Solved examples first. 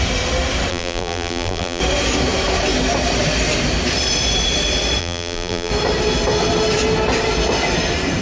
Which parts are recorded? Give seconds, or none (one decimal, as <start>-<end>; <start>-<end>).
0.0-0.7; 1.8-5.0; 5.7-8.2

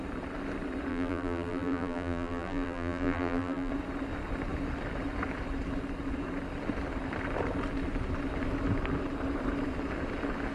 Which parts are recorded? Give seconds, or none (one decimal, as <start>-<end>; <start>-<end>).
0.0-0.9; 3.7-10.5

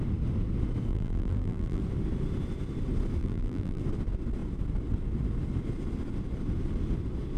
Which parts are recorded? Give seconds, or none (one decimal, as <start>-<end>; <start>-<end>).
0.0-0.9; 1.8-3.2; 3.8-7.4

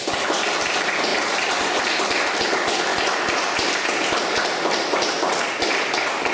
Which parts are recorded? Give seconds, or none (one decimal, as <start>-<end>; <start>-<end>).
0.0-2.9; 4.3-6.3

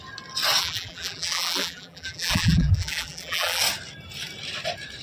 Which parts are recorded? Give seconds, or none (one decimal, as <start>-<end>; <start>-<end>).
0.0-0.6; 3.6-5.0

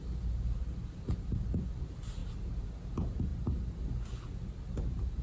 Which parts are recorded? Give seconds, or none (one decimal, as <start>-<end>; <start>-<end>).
0.0-5.2

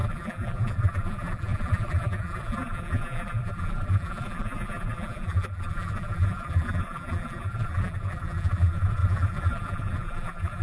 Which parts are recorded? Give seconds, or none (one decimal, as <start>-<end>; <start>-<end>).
none

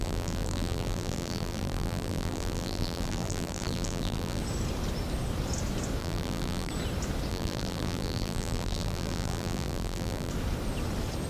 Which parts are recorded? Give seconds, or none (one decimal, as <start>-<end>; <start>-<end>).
4.4-6.0; 6.7-7.3; 10.3-11.3